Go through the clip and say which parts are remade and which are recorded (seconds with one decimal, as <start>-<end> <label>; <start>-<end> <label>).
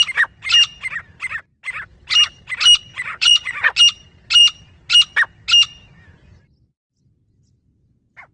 0.0-2.9 recorded; 2.9-3.8 remade; 3.8-8.3 recorded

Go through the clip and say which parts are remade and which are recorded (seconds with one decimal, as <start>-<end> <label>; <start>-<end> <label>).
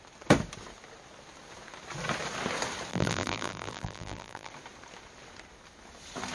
0.0-2.9 recorded; 2.9-4.5 remade; 4.5-6.3 recorded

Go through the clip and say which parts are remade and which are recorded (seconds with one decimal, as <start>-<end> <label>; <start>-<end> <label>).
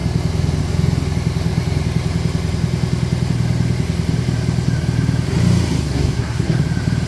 0.0-5.8 recorded; 5.8-6.6 remade; 6.6-7.1 recorded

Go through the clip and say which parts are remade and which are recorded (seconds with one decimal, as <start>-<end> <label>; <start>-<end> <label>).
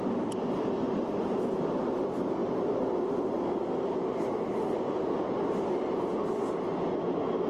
0.0-2.4 recorded; 2.4-2.9 remade; 2.9-7.5 recorded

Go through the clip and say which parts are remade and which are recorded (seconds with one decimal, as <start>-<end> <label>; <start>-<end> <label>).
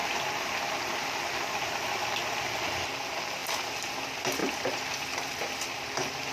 0.0-4.4 remade; 4.4-5.8 recorded; 5.8-6.3 remade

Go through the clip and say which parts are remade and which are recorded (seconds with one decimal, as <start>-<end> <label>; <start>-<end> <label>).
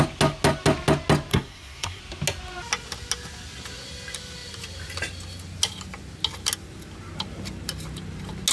0.0-1.3 recorded; 1.3-2.0 remade; 2.0-8.5 recorded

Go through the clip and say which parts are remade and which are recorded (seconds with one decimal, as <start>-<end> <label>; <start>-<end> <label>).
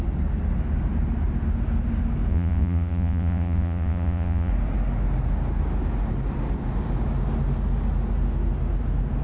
0.0-2.3 recorded; 2.3-4.5 remade; 4.5-9.2 recorded